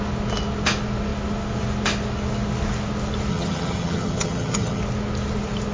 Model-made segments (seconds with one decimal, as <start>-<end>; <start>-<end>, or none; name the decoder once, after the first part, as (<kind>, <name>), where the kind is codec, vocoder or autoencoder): 3.3-4.8 (vocoder, HiFi-GAN)